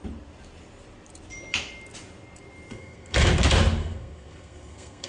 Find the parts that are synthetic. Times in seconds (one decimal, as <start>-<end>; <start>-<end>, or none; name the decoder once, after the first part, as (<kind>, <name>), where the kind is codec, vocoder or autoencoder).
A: 2.7-3.3 (codec, SNAC); 3.8-5.1